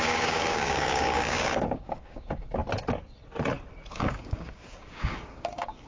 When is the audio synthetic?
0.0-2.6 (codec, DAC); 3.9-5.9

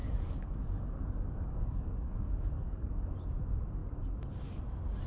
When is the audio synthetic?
0.0-3.1 (codec, DAC)